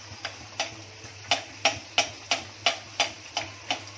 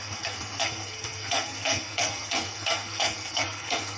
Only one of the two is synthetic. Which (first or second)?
second